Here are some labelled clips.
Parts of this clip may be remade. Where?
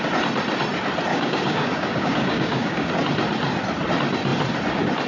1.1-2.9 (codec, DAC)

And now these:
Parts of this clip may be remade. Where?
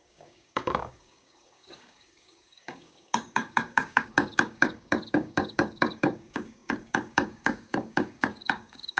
0.0-9.0 (codec, DAC)